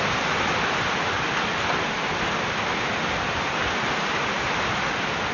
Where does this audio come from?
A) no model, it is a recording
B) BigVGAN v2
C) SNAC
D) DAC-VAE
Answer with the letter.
A